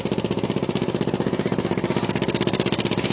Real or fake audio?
real